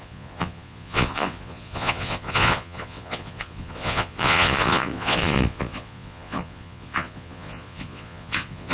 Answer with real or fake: fake